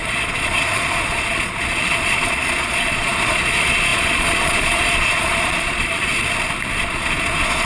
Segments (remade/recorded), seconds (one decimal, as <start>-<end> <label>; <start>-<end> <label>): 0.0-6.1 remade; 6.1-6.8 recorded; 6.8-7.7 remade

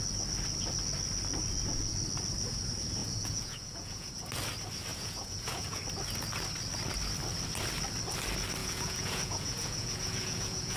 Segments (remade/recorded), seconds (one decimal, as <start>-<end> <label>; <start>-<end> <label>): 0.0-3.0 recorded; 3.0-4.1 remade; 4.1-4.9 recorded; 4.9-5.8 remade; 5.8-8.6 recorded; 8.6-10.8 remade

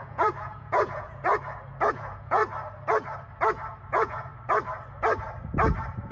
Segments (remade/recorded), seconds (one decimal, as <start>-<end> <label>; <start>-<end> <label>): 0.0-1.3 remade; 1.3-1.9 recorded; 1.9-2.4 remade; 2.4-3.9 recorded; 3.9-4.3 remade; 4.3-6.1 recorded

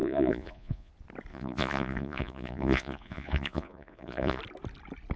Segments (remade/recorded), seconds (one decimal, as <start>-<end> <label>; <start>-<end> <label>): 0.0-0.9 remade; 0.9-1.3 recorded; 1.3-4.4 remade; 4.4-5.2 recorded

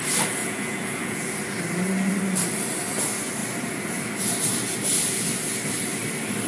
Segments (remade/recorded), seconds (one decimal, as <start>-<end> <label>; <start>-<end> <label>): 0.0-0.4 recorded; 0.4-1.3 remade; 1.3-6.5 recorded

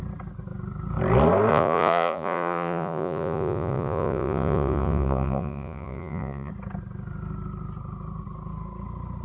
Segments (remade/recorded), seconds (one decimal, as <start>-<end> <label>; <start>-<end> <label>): 0.0-1.5 recorded; 1.5-6.5 remade; 6.5-9.2 recorded

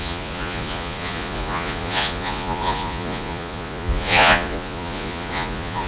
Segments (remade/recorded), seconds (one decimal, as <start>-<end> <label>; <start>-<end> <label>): 0.0-5.9 remade

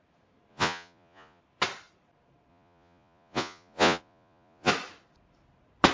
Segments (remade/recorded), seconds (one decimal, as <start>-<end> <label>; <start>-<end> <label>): 0.0-0.5 recorded; 0.5-1.4 remade; 1.4-2.5 recorded; 2.5-4.7 remade; 4.7-5.9 recorded